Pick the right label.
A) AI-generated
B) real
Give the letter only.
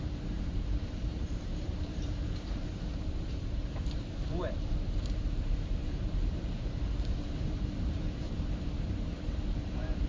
A